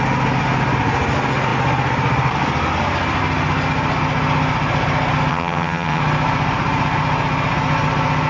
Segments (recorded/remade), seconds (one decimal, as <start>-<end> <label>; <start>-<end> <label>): 0.0-5.3 recorded; 5.3-6.0 remade; 6.0-8.3 recorded